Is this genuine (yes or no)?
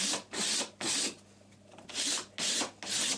yes